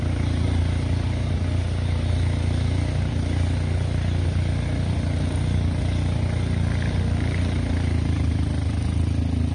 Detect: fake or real real